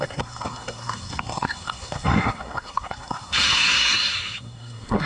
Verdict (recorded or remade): remade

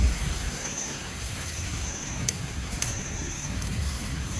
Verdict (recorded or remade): remade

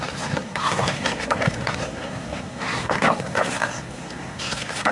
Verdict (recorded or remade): remade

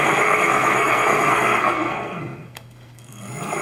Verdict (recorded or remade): remade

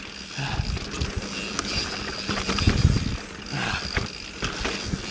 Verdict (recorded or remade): recorded